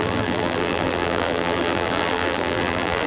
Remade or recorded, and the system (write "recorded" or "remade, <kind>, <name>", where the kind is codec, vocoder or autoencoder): remade, vocoder, BigVGAN v2